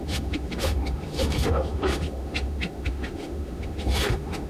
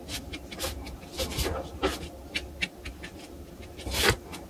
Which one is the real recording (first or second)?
second